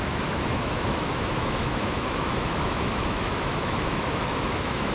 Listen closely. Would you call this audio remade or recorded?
remade